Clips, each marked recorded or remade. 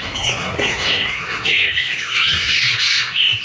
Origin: remade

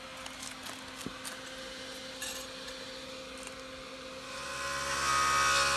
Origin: recorded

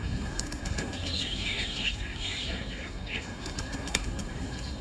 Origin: remade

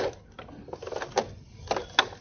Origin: recorded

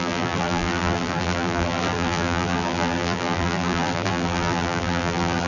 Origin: remade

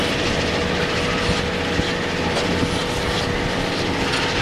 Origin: recorded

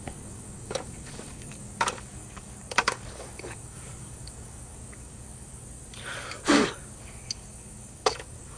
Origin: remade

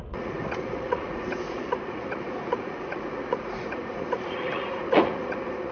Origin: remade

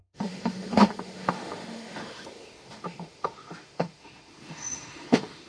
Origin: remade